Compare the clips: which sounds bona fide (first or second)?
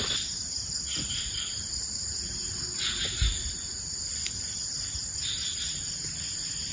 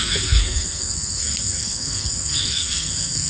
first